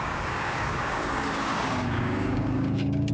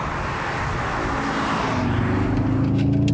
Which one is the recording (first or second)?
second